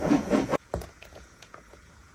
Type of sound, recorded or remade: remade